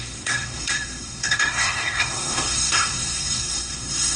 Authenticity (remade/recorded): remade